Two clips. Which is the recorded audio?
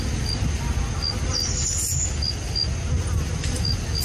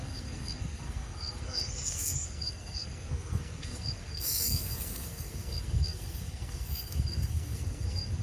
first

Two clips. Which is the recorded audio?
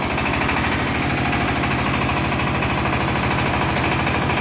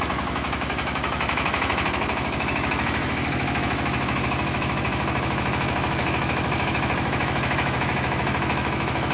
first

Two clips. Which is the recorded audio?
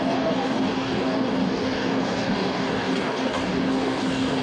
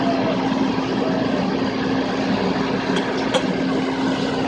second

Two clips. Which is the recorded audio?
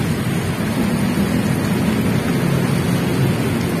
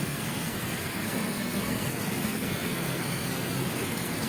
first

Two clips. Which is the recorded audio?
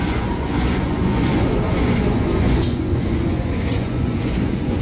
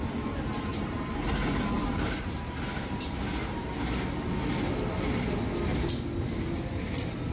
second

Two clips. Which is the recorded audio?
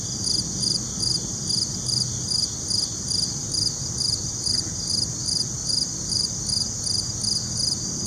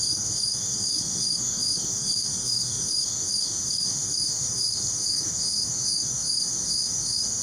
first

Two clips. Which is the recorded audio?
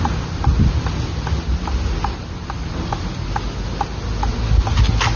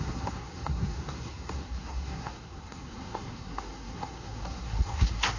first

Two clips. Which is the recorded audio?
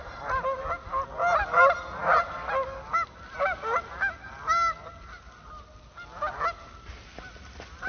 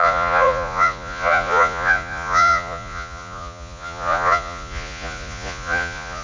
first